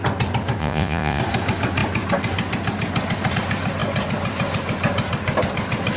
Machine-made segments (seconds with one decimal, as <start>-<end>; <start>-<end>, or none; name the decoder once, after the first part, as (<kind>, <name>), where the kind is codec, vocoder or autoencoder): 0.6-1.2 (vocoder, Vocos)